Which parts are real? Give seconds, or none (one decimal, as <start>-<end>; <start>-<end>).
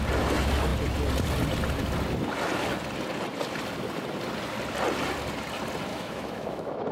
0.0-5.9